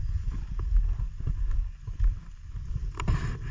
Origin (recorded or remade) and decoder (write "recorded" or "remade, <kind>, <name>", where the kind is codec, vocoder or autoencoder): recorded